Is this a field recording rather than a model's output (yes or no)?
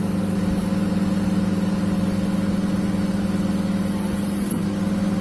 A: yes